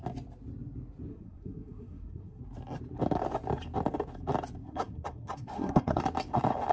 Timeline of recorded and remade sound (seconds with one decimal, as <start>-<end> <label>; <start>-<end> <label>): 0.0-1.1 recorded; 1.1-2.4 remade; 2.4-4.6 recorded; 4.6-6.0 remade; 6.0-6.7 recorded